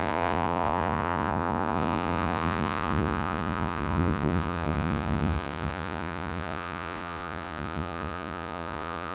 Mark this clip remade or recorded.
remade